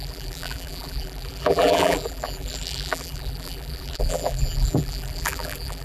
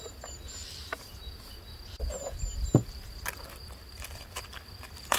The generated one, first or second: first